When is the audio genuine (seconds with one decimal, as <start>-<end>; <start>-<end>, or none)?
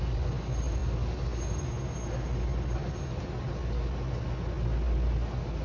0.0-5.6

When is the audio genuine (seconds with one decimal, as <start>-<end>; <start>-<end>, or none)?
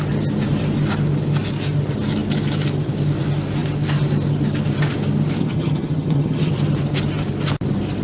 0.0-5.4; 6.5-8.0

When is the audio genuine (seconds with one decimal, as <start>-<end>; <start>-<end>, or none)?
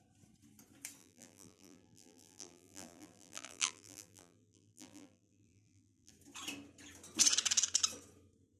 0.0-1.0; 6.1-8.6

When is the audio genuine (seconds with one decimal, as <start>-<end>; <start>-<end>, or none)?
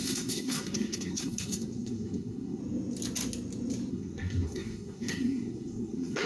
2.6-3.9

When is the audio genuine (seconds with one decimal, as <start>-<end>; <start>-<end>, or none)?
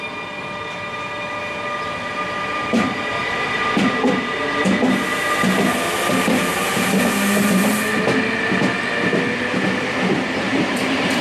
0.0-6.5; 7.0-10.5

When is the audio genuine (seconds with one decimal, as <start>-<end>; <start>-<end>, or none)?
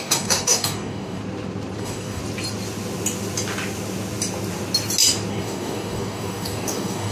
1.2-1.8; 2.2-5.3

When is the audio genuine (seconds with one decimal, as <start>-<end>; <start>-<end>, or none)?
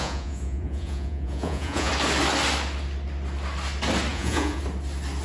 1.9-4.1; 4.6-5.2